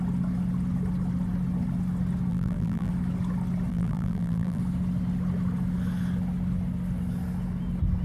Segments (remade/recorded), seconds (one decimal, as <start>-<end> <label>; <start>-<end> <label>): 0.0-2.3 recorded; 2.3-2.9 remade; 2.9-3.7 recorded; 3.7-4.6 remade; 4.6-8.0 recorded